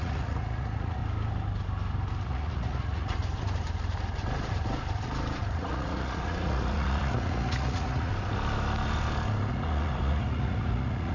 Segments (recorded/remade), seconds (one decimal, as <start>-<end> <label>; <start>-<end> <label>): 0.0-1.0 remade; 1.0-2.2 recorded; 2.2-3.2 remade; 3.2-5.5 recorded; 5.5-8.1 remade; 8.1-9.5 recorded; 9.5-11.1 remade